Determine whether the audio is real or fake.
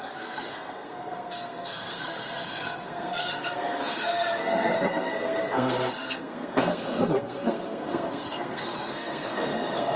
fake